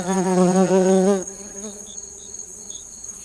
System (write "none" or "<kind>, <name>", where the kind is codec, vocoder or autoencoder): vocoder, Vocos